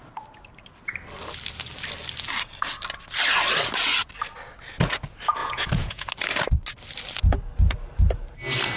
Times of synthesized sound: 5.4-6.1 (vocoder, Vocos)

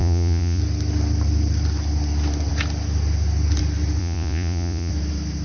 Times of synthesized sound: 0.0-0.6 (vocoder, Vocos); 4.0-4.9

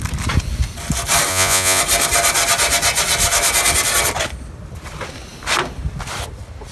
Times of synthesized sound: 1.3-1.8 (vocoder, Vocos)

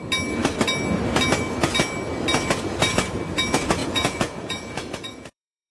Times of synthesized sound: 3.8-5.7 (vocoder, Vocos)

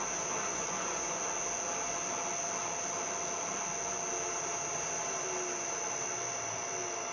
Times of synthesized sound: 0.5-1.2 (vocoder, Vocos)